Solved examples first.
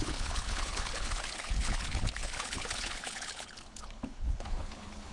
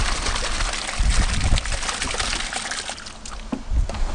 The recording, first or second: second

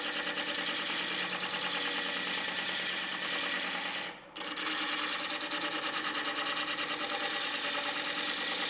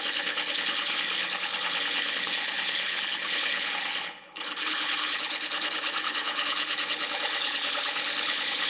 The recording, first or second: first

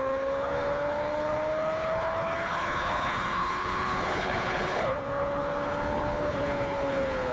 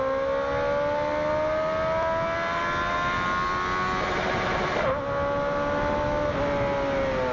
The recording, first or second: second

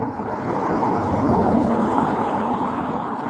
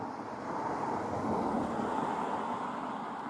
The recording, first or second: second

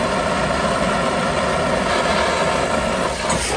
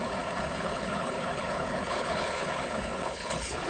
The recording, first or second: first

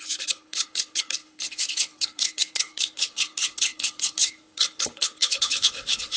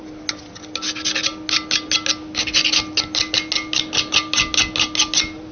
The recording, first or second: second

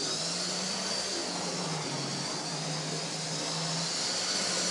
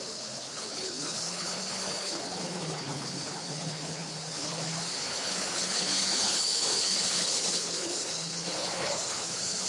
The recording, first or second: first